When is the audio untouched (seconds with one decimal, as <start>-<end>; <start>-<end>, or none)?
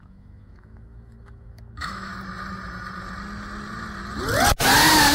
2.1-5.1